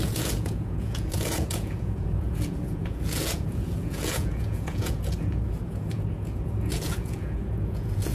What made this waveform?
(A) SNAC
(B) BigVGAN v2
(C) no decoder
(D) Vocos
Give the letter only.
D